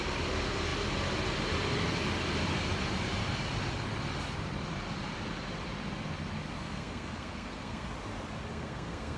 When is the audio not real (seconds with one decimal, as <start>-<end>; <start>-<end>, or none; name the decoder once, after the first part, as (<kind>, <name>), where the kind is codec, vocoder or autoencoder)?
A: 6.6-7.9 (codec, SNAC); 8.5-9.2